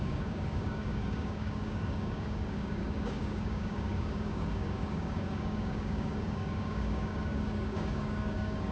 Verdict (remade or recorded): remade